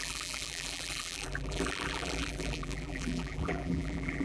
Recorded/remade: remade